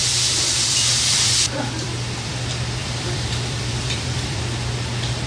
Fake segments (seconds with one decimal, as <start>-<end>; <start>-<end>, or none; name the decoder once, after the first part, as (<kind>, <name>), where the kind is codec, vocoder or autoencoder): 0.0-2.4 (vocoder, BigVGAN v2); 2.8-4.4